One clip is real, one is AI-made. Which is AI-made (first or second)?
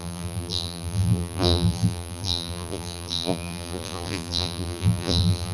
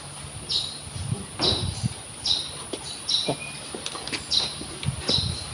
first